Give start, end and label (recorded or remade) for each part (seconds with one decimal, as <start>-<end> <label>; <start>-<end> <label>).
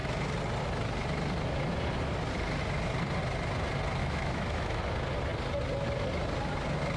0.0-4.0 recorded; 4.0-4.8 remade; 4.8-7.0 recorded